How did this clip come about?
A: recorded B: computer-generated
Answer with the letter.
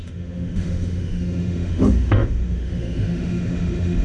B